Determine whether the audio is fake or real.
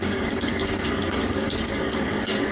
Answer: fake